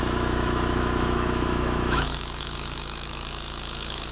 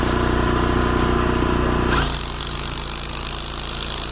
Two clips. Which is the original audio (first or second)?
second